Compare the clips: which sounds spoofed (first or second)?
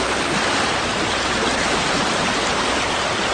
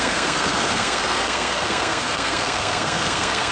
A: second